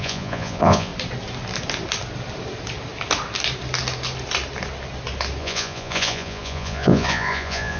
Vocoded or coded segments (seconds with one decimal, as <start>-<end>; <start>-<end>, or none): 0.0-0.9; 5.4-7.8